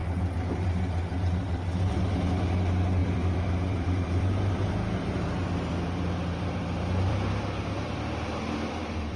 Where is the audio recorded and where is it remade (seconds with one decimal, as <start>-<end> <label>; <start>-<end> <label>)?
0.0-1.4 recorded; 1.4-9.2 remade